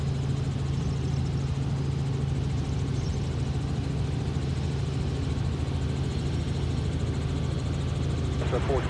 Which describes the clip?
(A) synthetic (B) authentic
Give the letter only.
B